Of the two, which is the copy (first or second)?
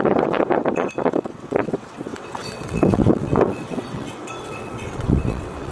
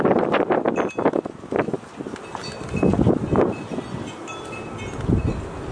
first